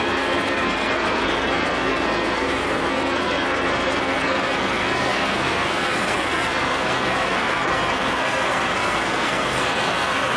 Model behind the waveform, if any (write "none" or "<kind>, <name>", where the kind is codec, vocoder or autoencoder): codec, SNAC